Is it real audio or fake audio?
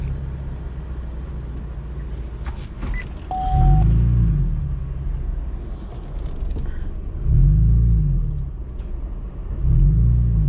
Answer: real